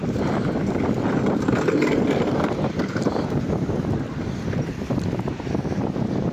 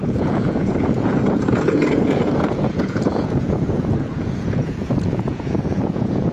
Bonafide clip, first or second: first